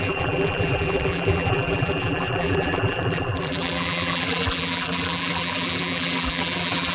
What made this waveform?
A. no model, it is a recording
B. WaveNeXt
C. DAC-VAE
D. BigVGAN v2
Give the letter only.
D